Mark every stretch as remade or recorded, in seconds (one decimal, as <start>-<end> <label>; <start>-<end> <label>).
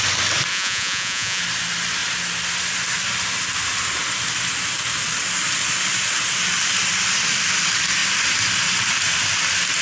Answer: 0.0-0.5 recorded; 0.5-1.4 remade; 1.4-9.8 recorded